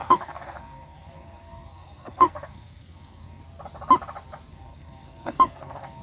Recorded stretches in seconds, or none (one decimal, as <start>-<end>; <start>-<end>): 3.4-4.5